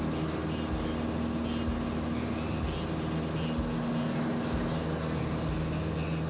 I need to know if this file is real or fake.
real